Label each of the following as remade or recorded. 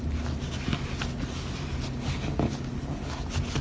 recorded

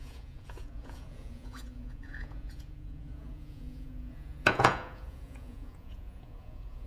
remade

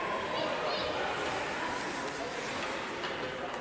recorded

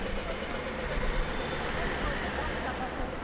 recorded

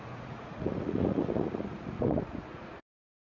remade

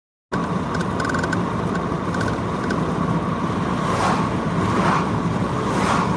recorded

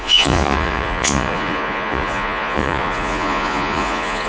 remade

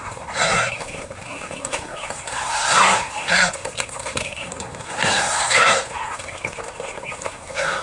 remade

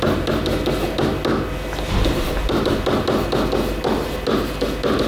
recorded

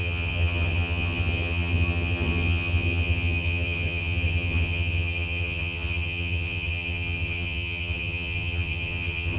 remade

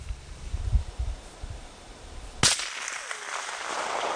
recorded